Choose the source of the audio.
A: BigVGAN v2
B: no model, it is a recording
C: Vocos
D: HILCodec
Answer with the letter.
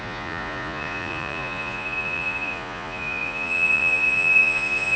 C